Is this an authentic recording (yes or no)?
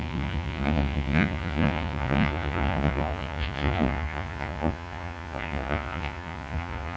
no